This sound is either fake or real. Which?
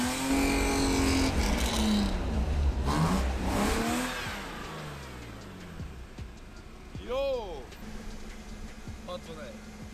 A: real